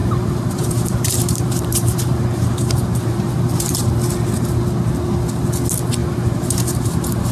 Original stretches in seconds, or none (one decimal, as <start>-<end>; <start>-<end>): 3.9-6.0